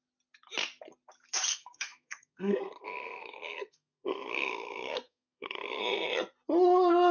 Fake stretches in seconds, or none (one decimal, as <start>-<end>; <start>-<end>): 1.5-5.8